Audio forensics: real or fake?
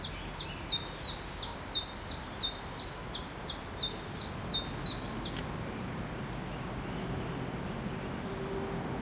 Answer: real